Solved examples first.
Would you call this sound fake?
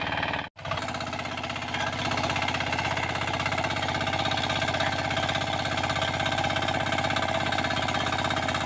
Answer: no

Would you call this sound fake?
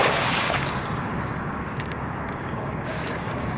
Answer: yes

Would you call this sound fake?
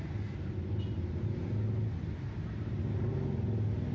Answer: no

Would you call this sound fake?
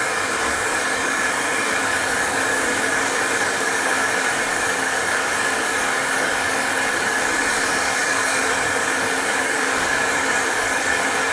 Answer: yes